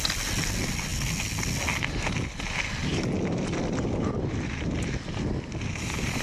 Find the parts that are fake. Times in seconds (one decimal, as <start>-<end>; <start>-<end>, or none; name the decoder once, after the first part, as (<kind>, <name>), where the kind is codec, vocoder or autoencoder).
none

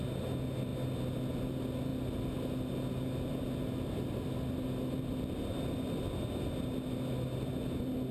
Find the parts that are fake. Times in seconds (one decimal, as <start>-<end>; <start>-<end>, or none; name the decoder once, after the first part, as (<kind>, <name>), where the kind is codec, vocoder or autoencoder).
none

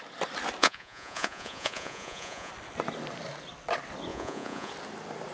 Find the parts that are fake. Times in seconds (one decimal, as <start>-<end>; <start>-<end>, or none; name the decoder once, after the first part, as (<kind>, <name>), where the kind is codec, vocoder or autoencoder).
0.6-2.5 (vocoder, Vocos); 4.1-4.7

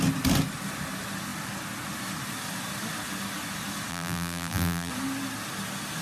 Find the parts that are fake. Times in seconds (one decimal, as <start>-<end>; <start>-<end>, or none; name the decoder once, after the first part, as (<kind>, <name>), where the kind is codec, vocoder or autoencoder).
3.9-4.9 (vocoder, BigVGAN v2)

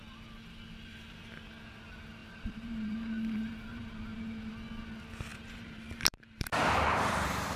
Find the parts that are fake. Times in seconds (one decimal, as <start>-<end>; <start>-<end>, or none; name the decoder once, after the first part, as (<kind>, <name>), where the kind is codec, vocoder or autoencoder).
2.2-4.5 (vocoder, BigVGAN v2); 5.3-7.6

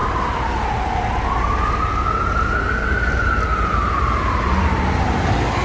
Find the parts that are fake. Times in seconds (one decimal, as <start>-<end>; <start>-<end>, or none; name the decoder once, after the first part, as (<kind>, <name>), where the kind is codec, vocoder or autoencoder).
none

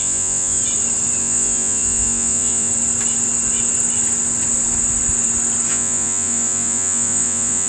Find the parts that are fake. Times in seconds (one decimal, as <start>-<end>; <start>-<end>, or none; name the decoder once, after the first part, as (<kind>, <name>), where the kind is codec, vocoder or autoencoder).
0.0-0.6 (vocoder, Vocos); 1.2-2.7; 5.7-7.7